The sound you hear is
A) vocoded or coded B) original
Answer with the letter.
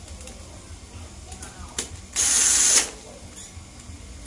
B